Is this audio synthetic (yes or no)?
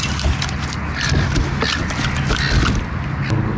no